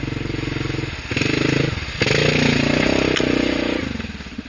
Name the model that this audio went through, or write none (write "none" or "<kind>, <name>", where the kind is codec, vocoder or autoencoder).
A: none